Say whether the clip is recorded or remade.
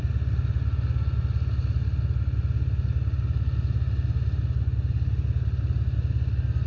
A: recorded